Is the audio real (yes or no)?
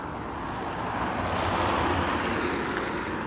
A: yes